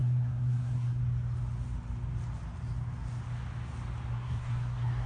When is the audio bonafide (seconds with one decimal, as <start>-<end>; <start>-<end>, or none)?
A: 1.0-4.1